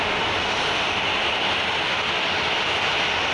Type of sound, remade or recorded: recorded